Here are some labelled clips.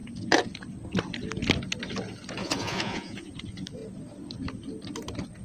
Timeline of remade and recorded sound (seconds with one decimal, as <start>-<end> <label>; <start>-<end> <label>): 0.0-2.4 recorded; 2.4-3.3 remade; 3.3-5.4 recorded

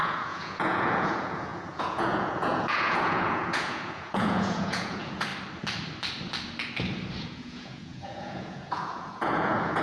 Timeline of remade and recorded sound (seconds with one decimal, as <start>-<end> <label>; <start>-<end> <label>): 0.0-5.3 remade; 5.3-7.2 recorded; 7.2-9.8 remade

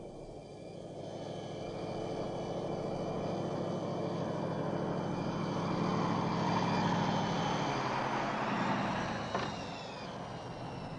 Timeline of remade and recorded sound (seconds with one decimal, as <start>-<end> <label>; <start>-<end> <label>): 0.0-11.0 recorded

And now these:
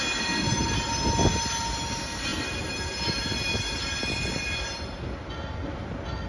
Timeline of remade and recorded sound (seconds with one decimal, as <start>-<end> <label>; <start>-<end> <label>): 0.0-6.3 recorded

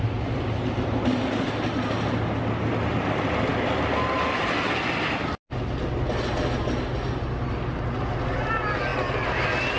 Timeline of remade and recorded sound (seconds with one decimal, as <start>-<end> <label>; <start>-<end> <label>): 0.0-9.8 recorded